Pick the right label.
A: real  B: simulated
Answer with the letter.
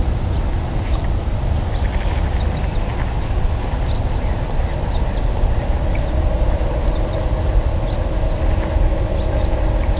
A